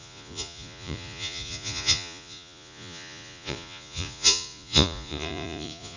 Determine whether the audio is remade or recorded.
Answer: remade